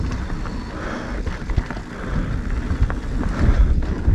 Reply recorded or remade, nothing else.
recorded